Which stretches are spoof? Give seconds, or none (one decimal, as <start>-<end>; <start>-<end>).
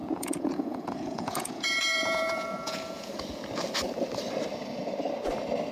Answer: 0.0-3.1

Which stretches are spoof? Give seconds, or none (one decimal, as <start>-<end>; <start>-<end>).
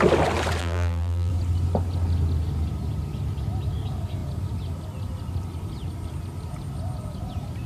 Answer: 0.6-1.3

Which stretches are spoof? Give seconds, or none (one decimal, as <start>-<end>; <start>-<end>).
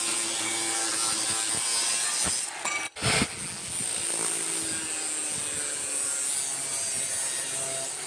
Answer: none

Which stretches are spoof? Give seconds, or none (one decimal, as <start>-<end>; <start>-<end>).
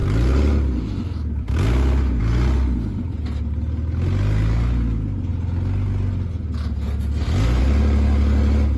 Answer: none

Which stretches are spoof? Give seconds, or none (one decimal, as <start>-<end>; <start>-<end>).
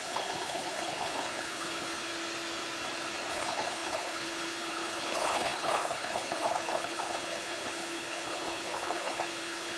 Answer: 0.0-2.1; 3.3-9.8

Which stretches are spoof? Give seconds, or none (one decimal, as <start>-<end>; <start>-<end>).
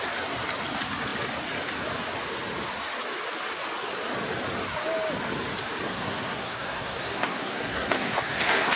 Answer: 5.9-8.8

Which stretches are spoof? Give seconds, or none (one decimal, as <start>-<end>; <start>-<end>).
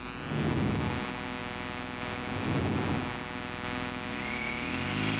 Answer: none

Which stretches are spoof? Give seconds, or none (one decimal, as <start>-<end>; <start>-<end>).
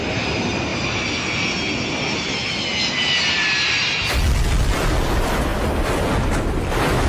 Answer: none